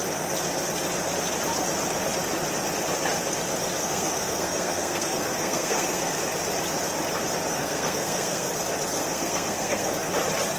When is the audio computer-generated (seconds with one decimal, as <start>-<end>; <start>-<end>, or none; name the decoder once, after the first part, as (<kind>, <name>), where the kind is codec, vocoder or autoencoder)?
3.8-6.2 (codec, SNAC); 7.5-8.5; 9.0-9.9